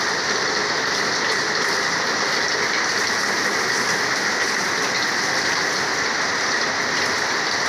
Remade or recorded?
recorded